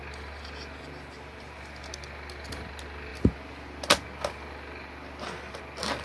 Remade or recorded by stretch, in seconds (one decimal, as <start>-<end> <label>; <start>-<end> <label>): 0.0-6.0 recorded